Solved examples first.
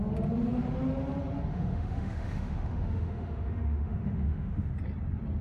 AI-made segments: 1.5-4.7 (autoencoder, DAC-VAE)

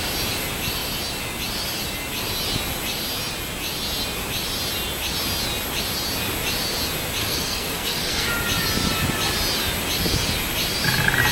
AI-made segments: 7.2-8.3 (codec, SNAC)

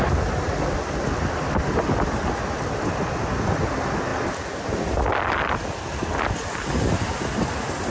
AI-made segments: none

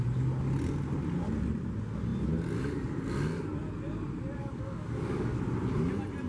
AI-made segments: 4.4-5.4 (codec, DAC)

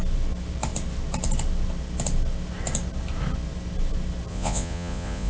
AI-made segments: 4.3-5.3 (vocoder, Vocos)